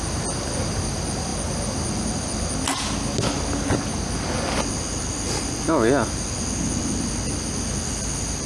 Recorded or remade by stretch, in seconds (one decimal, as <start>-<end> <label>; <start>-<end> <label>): 0.0-8.5 recorded